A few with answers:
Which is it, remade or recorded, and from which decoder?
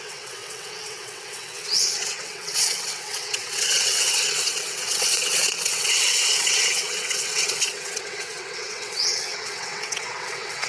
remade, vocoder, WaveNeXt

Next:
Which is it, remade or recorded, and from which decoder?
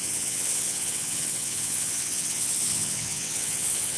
remade, vocoder, WaveNeXt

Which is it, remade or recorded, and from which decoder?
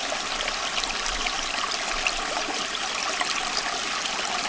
recorded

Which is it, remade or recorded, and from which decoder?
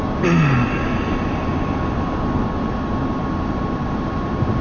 recorded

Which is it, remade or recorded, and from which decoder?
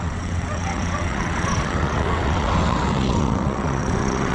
remade, vocoder, WaveNeXt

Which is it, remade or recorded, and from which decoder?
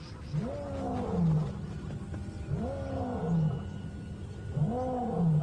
recorded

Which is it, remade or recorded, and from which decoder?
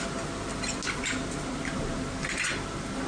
recorded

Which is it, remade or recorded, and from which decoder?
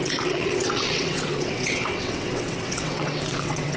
remade, vocoder, WaveNeXt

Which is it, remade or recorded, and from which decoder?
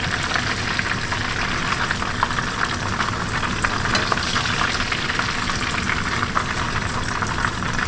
recorded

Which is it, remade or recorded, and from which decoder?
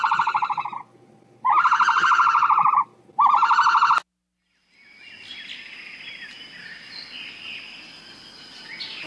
recorded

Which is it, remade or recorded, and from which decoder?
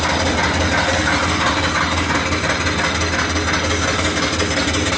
recorded